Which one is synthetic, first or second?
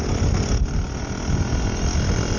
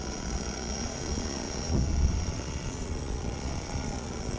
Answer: second